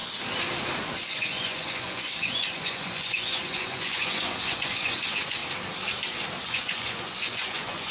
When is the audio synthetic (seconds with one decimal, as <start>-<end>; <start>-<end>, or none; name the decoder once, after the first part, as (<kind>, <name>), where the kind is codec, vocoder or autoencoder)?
0.9-5.4 (vocoder, Vocos); 6.4-7.9